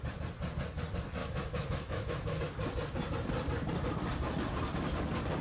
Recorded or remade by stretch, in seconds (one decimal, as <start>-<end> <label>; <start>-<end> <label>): 0.0-1.2 recorded; 1.2-2.4 remade; 2.4-5.4 recorded